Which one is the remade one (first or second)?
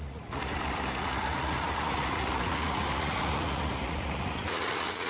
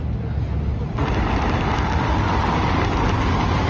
first